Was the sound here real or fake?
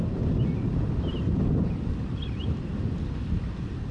real